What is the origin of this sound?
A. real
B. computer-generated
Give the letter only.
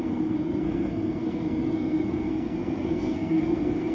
B